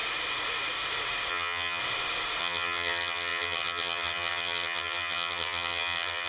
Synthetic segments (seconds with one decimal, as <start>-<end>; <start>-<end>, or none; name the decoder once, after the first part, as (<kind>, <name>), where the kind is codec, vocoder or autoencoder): 1.3-1.8 (vocoder, HiFi-GAN); 2.4-6.3